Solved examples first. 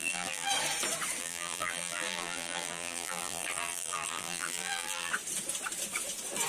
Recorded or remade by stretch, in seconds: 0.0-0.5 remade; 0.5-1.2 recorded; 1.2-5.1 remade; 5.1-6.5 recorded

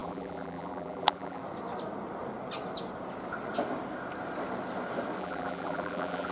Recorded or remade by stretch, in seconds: 0.0-1.4 remade; 1.4-5.2 recorded; 5.2-6.3 remade

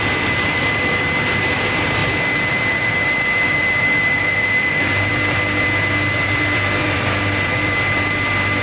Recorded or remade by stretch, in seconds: 0.0-2.0 remade; 2.0-2.5 recorded; 2.5-8.6 remade

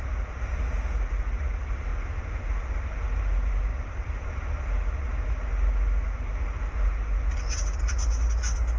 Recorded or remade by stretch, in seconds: 0.0-8.8 recorded

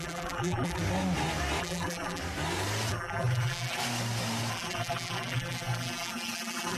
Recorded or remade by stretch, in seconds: 0.0-0.8 remade; 0.8-1.6 recorded; 1.6-2.2 remade; 2.2-2.9 recorded; 2.9-3.8 remade; 3.8-4.5 recorded; 4.5-6.8 remade

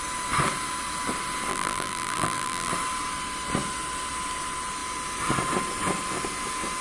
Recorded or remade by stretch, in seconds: 0.0-1.5 recorded; 1.5-2.7 remade; 2.7-6.8 recorded

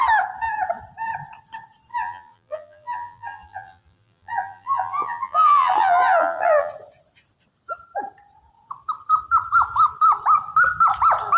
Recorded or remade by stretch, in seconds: 0.0-1.9 recorded; 1.9-6.7 remade; 6.7-11.4 recorded

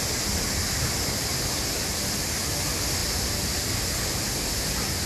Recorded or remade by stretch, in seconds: 0.0-5.1 recorded